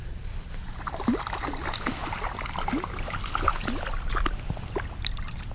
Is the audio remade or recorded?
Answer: recorded